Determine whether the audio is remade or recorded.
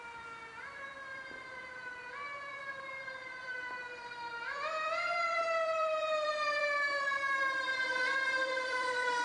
remade